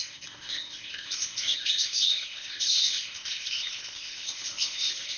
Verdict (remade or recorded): remade